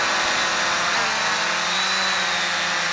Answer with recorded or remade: recorded